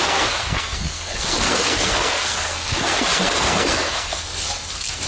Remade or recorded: remade